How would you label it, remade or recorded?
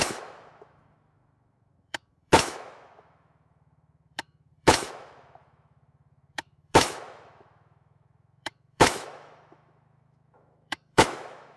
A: remade